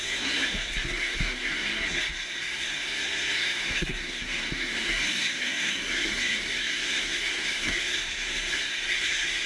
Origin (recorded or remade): remade